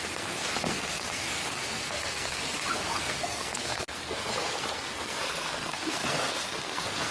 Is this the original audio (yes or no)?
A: no